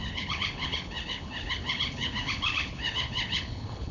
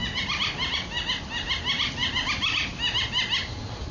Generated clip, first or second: first